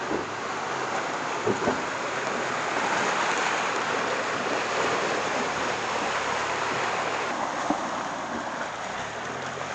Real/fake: real